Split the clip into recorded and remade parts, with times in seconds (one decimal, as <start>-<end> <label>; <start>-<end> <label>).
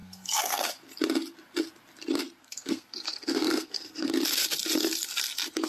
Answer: 0.0-0.7 remade; 0.7-2.4 recorded; 2.4-4.1 remade; 4.1-5.7 recorded